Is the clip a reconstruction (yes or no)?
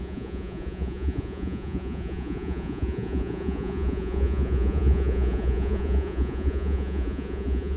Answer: yes